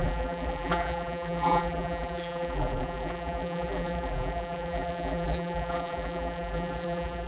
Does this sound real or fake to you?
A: fake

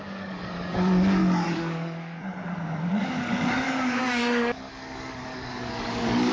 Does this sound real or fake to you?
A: fake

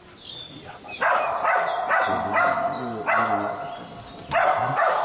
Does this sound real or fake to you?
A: real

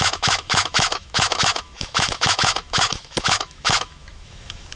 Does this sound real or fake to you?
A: fake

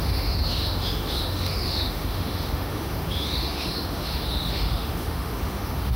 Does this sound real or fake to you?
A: fake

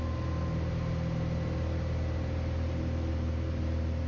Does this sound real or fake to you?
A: real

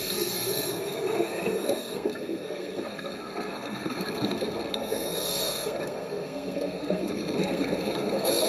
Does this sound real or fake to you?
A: fake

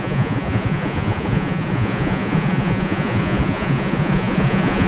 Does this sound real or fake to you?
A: fake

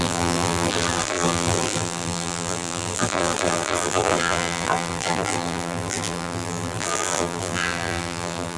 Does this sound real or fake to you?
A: fake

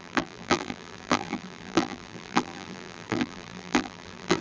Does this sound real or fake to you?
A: fake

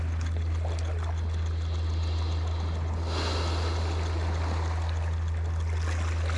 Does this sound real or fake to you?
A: real